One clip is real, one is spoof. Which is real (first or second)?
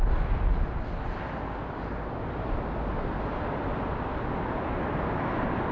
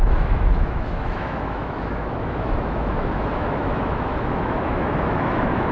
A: first